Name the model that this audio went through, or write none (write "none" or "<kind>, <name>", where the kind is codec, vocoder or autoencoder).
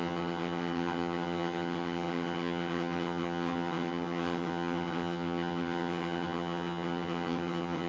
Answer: vocoder, HiFi-GAN